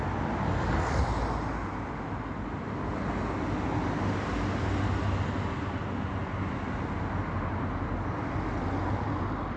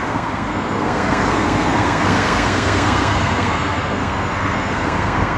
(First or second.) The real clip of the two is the first